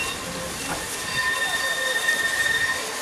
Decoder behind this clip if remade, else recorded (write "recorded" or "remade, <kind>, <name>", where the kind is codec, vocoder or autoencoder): recorded